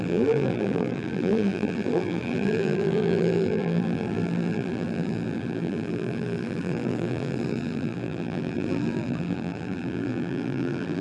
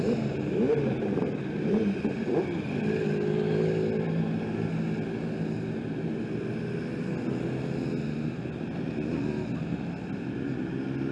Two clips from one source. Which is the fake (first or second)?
first